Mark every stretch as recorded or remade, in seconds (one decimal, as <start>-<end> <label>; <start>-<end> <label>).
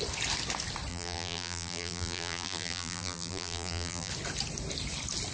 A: 0.0-0.9 recorded; 0.9-4.1 remade; 4.1-5.3 recorded